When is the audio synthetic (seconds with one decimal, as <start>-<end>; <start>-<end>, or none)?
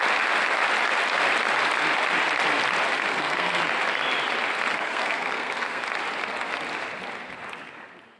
3.1-3.6; 4.7-5.8